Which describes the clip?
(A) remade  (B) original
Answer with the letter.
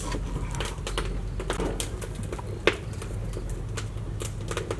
B